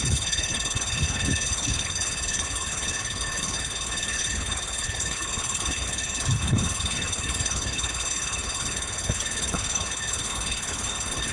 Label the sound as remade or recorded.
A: remade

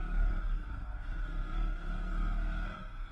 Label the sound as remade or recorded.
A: remade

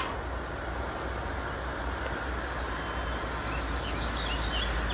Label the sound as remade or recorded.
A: recorded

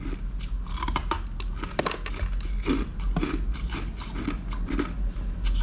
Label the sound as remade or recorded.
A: recorded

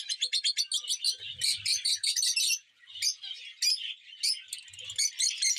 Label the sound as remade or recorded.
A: recorded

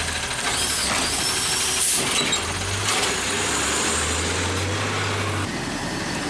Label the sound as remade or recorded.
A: recorded